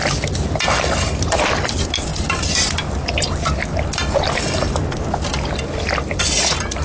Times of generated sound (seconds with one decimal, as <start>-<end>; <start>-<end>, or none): none